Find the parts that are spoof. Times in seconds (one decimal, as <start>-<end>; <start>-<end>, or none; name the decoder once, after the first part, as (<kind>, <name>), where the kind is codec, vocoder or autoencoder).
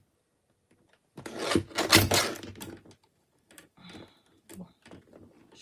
none